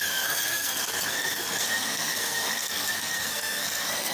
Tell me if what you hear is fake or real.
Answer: fake